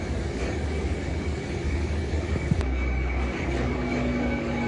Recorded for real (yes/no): no